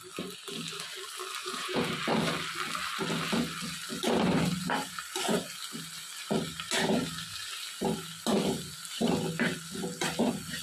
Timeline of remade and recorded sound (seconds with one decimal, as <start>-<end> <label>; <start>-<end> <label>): 0.0-1.4 recorded; 1.4-1.9 remade; 1.9-10.6 recorded